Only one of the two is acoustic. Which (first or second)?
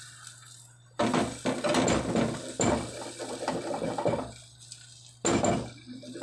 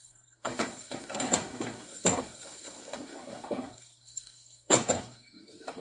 first